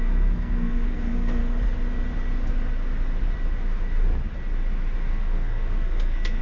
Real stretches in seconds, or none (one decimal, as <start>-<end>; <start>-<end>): 1.4-5.1